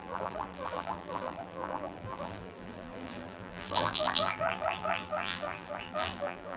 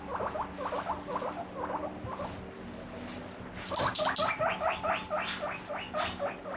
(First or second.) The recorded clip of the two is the second